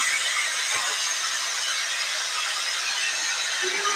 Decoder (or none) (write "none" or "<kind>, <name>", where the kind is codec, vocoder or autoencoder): none